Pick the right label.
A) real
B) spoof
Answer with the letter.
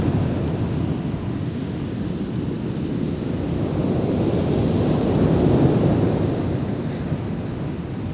A